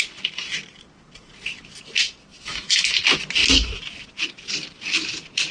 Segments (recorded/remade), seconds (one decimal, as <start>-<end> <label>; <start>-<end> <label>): 0.0-2.3 recorded; 2.3-3.0 remade; 3.0-5.5 recorded